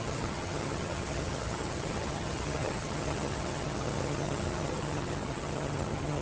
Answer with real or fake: fake